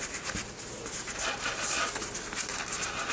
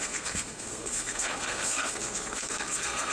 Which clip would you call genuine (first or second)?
first